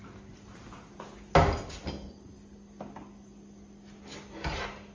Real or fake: real